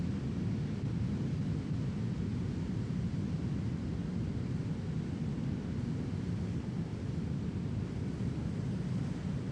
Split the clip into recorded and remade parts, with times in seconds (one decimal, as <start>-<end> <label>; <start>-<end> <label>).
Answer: 0.0-9.5 recorded

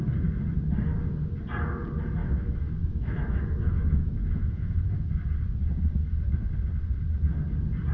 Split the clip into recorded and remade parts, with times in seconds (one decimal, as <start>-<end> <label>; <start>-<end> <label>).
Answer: 0.0-2.2 recorded; 2.2-5.1 remade; 5.1-7.9 recorded

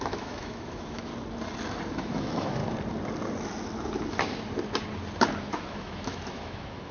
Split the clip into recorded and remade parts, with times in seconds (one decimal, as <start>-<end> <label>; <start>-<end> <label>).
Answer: 0.0-1.1 remade; 1.1-1.9 recorded; 1.9-2.6 remade; 2.6-5.4 recorded; 5.4-6.9 remade

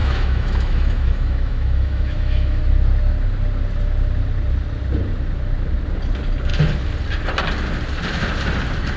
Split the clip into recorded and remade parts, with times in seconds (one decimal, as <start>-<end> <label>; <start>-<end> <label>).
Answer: 0.0-2.6 remade; 2.6-9.0 recorded

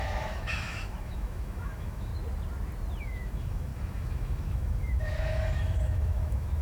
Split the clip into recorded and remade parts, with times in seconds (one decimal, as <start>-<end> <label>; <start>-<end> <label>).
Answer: 0.0-2.1 remade; 2.1-3.0 recorded; 3.0-6.6 remade

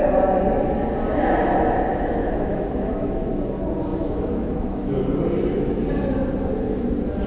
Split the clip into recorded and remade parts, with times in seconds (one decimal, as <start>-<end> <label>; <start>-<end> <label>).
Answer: 0.0-1.9 recorded; 1.9-3.3 remade; 3.3-3.9 recorded; 3.9-5.0 remade; 5.0-7.3 recorded

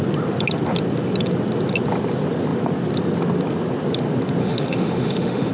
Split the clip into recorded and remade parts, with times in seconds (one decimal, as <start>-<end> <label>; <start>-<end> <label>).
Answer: 0.0-4.4 recorded; 4.4-5.5 remade

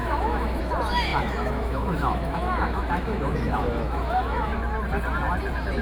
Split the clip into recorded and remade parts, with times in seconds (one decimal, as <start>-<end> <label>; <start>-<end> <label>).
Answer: 0.0-4.5 remade; 4.5-5.8 recorded